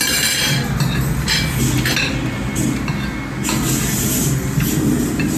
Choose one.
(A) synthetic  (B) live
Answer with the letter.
B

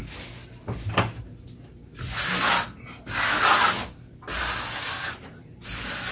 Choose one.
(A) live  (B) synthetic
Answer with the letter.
A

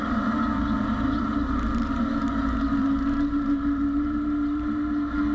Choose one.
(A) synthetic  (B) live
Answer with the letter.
A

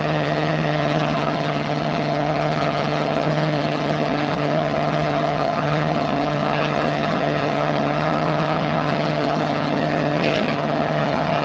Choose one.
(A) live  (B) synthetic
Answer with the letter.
B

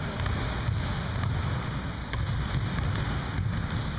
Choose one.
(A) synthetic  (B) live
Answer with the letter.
B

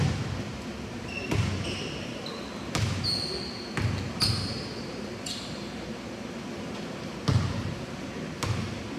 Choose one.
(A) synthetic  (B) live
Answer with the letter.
B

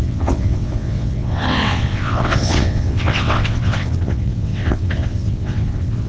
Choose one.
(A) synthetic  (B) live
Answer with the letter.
A